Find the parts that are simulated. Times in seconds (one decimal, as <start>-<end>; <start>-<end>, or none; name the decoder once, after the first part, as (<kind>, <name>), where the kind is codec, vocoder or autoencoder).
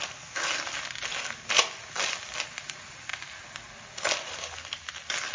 none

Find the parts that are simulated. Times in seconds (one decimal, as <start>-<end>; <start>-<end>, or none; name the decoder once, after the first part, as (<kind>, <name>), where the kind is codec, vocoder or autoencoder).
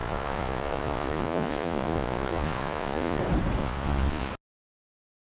0.0-3.2 (vocoder, Vocos); 3.6-4.3